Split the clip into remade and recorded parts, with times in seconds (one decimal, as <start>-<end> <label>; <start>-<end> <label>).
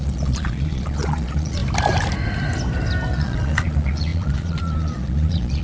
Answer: 0.0-1.6 remade; 1.6-3.1 recorded; 3.1-5.6 remade